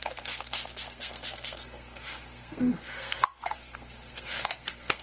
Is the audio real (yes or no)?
no